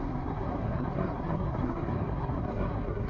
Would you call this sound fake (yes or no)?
yes